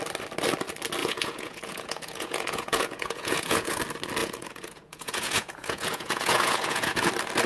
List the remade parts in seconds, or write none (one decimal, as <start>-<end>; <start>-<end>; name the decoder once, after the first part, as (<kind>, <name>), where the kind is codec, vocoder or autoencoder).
1.0-3.8 (vocoder, Vocos); 4.2-7.1